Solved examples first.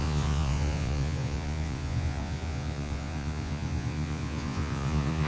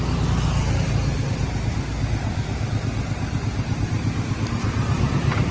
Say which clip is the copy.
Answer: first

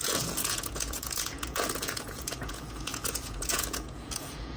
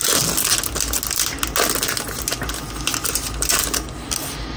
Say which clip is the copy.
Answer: first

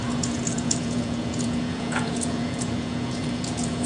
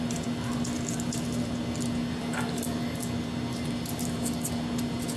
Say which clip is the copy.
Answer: first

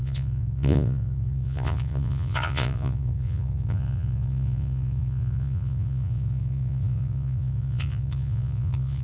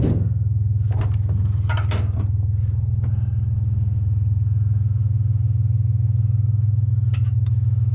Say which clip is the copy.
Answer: first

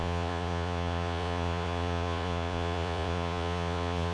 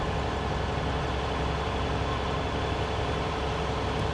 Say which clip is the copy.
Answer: first